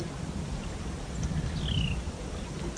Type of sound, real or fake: real